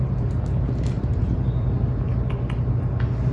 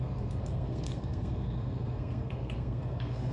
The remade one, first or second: second